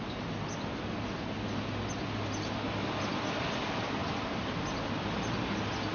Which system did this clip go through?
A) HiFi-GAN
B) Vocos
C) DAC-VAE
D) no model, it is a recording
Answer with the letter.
D